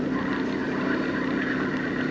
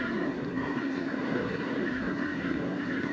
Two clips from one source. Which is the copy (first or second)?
second